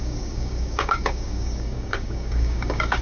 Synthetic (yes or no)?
yes